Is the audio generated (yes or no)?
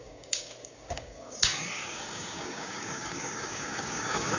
yes